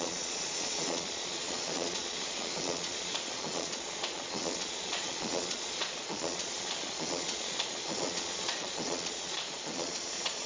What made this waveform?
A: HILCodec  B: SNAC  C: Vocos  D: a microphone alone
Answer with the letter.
C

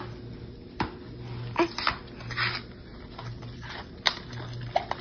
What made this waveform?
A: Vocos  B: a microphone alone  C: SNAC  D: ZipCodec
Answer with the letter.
B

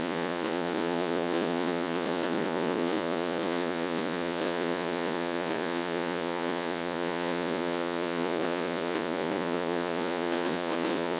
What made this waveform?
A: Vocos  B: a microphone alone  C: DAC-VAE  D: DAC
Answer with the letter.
A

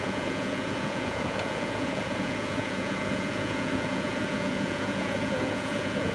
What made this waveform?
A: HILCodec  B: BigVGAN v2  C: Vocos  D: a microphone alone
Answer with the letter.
C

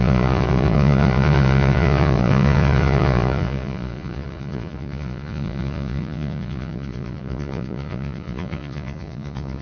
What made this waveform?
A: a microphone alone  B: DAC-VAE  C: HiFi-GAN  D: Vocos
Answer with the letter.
D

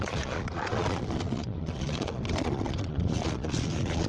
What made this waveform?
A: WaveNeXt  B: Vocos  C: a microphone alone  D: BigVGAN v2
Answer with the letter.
B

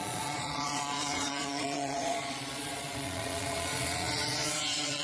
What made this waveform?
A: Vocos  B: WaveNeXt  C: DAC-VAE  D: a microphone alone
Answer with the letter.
A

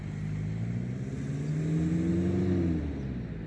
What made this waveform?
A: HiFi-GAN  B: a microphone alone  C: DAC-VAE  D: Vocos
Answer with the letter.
B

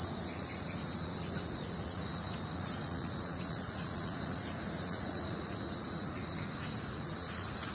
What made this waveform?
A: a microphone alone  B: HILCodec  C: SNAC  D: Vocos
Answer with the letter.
D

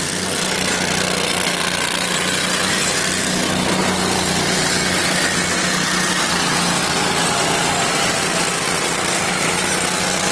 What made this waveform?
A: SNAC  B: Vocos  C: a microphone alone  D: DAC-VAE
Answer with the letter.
C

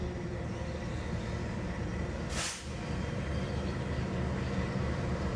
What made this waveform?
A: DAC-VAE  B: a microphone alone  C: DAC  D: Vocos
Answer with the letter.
B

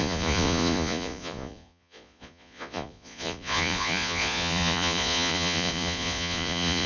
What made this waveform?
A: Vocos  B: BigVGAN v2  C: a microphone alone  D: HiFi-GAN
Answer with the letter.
A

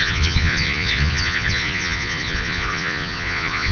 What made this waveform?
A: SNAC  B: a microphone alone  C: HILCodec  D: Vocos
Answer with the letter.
D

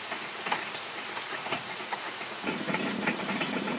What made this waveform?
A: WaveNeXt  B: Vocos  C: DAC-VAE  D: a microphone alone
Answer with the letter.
B